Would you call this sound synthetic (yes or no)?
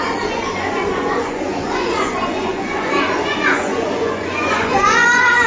yes